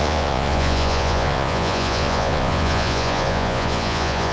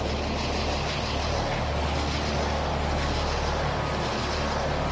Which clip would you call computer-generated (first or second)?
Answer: first